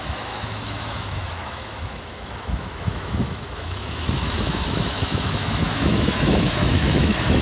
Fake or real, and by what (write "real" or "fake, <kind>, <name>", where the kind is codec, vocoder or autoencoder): fake, autoencoder, DAC-VAE